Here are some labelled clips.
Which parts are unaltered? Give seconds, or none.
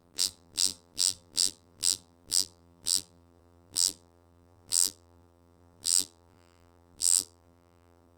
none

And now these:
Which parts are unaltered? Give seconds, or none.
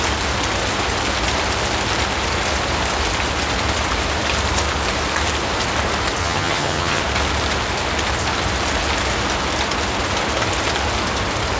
0.0-6.2; 7.0-11.6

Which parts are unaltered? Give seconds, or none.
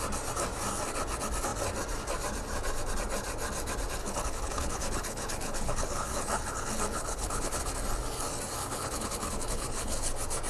0.0-4.0; 7.6-8.6; 10.0-10.5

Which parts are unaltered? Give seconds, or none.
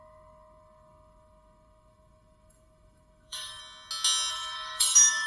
3.6-4.3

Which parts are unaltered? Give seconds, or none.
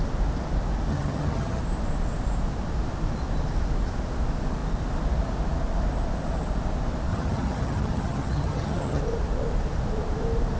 0.0-0.9; 1.6-7.1; 9.0-10.6